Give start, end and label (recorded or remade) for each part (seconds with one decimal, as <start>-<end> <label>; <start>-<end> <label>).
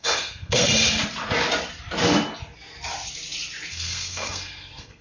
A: 0.0-0.7 remade; 0.7-3.7 recorded; 3.7-5.0 remade